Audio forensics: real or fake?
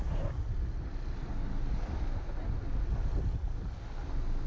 real